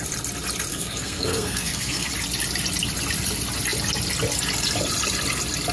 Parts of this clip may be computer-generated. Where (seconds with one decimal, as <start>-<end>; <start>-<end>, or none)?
0.7-2.1